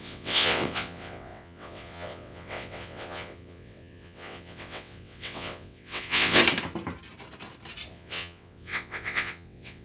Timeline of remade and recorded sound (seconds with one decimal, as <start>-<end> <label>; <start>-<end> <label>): 0.0-6.4 remade; 6.4-7.9 recorded; 7.9-9.8 remade